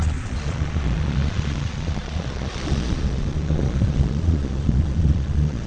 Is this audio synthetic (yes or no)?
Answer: yes